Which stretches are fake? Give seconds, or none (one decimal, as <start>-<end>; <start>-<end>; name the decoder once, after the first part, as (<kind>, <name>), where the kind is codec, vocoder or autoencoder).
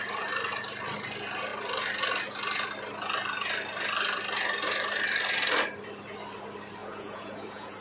6.8-7.8 (vocoder, Vocos)